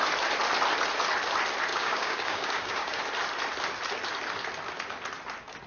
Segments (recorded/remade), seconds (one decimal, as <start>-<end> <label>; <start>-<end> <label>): 0.0-1.7 recorded; 1.7-3.0 remade; 3.0-5.7 recorded